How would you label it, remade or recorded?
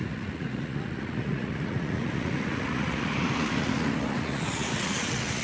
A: remade